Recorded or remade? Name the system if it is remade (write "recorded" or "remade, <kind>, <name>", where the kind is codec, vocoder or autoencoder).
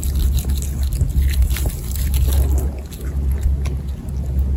recorded